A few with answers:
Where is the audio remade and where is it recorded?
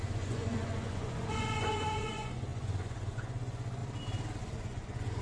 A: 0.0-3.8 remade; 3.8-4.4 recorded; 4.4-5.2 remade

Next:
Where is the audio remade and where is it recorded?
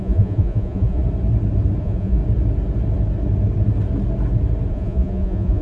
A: 0.0-1.0 remade; 1.0-1.8 recorded; 1.8-2.2 remade; 2.2-4.7 recorded; 4.7-5.6 remade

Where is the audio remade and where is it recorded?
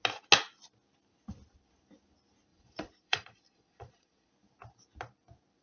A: 0.0-2.5 recorded; 2.5-4.3 remade; 4.3-5.6 recorded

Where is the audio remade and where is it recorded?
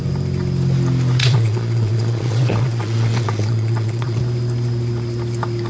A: 0.0-1.2 recorded; 1.2-4.2 remade; 4.2-5.7 recorded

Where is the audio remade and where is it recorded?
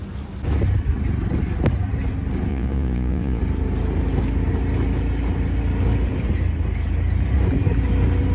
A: 0.0-2.5 recorded; 2.5-3.4 remade; 3.4-8.3 recorded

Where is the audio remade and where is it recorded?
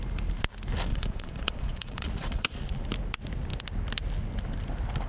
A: 0.0-0.9 recorded; 0.9-2.8 remade; 2.8-5.1 recorded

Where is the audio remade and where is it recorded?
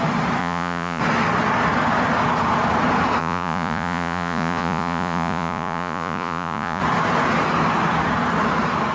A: 0.0-0.4 recorded; 0.4-1.0 remade; 1.0-3.2 recorded; 3.2-6.8 remade; 6.8-8.9 recorded